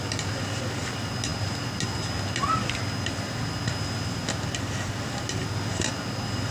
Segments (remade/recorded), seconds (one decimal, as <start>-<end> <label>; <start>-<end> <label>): 0.0-6.5 recorded

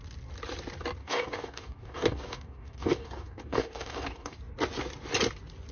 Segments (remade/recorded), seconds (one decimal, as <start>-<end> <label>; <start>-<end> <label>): 0.0-1.0 recorded; 1.0-4.4 remade; 4.4-5.7 recorded

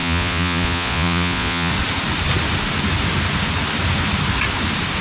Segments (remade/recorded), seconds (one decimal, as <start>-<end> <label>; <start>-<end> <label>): 0.0-1.7 remade; 1.7-5.0 recorded